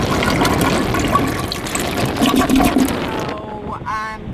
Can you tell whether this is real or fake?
real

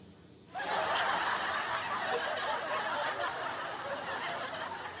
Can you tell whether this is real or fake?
real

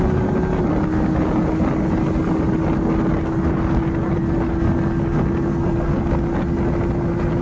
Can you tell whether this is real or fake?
real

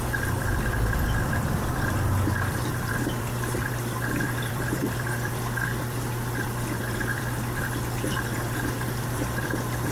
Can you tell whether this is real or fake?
fake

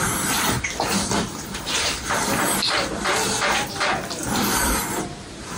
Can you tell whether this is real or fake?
fake